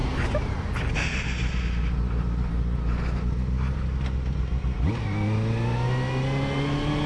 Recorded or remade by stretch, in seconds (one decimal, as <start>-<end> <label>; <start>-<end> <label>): 0.0-7.1 recorded